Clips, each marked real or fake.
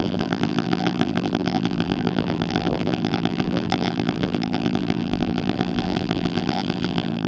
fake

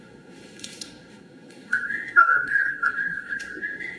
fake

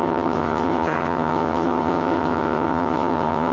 fake